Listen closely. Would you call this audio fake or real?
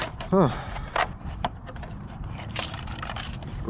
fake